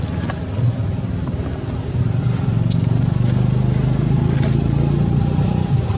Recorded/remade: recorded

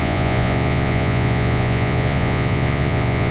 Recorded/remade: remade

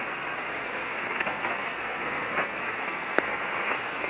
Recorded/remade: remade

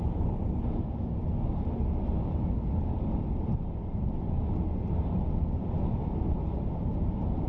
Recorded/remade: recorded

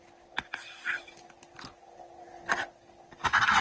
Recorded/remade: recorded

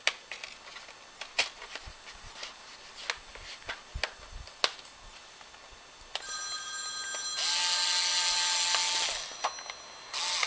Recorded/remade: recorded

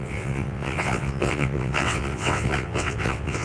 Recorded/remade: remade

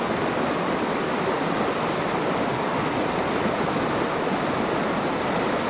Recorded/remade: recorded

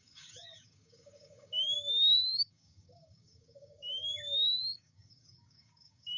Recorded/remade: remade